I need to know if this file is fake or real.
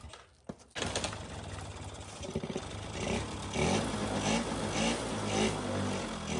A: real